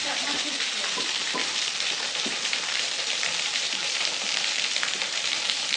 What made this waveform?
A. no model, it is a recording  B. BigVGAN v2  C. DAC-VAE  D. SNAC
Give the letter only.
B